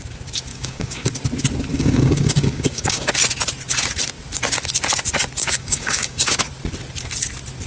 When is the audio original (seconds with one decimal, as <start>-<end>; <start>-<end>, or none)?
0.0-0.5; 1.1-1.7; 3.1-5.4; 6.4-7.7